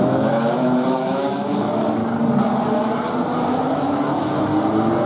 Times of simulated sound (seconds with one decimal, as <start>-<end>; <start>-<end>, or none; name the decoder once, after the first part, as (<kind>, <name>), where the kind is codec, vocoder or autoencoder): 0.0-2.0 (autoencoder, DAC-VAE); 3.7-4.5